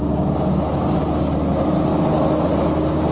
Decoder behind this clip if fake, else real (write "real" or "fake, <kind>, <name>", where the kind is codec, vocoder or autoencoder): real